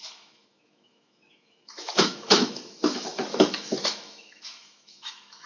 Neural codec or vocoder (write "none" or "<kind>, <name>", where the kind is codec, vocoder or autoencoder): autoencoder, DAC-VAE